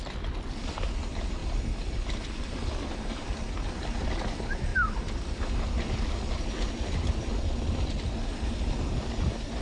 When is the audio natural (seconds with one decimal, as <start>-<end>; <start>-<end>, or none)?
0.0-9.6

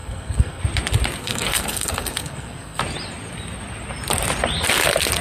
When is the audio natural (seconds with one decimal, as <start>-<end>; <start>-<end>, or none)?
0.6-1.2; 2.8-5.2

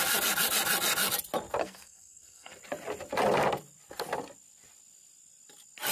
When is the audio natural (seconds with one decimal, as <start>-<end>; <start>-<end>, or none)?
0.0-1.6; 2.5-5.9

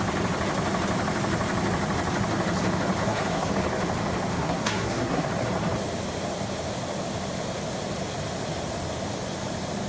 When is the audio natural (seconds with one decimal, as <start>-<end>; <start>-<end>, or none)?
0.0-3.0; 3.5-4.3; 5.3-9.9